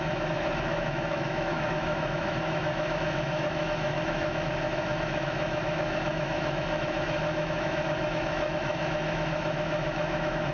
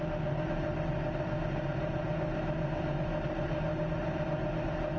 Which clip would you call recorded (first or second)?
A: second